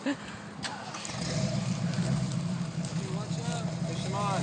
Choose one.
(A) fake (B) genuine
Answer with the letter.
B